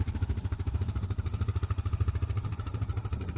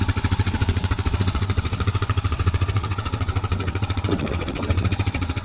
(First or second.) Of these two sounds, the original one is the first